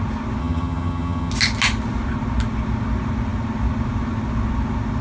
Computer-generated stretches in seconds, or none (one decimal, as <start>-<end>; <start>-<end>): 0.4-1.3